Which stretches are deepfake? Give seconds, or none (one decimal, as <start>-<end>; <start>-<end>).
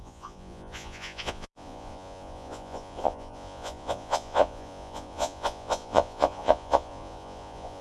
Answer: 0.0-7.8